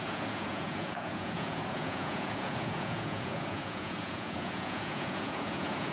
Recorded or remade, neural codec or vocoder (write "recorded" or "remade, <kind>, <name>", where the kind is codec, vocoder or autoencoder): remade, vocoder, Vocos